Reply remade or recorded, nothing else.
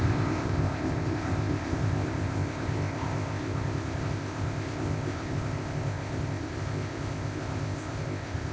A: remade